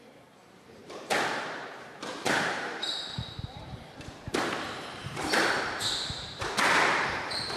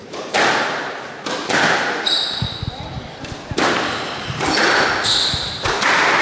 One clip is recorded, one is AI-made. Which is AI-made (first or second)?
first